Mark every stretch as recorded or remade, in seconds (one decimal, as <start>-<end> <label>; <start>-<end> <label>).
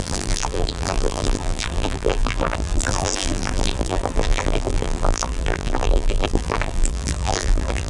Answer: 0.0-7.9 remade